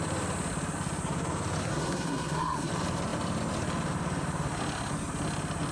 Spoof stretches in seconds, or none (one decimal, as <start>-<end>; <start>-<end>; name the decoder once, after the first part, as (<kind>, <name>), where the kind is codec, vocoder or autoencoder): 1.6-2.7 (codec, SNAC)